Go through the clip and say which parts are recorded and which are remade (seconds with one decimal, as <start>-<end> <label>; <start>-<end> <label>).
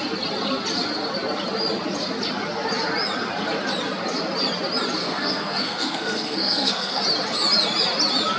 0.0-5.0 recorded; 5.0-7.0 remade; 7.0-8.4 recorded